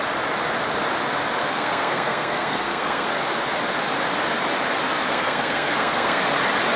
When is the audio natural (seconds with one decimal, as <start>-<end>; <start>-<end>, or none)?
0.0-1.4; 3.1-5.1; 6.2-6.8